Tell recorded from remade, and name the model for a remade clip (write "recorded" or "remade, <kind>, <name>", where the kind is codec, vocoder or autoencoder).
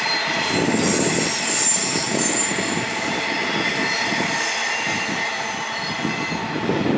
recorded